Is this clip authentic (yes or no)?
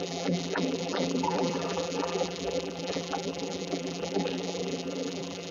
no